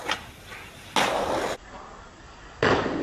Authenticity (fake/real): real